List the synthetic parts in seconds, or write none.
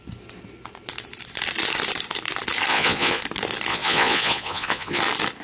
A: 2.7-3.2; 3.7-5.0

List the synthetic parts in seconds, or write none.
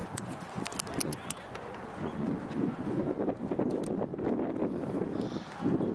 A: 0.0-0.5; 1.0-3.3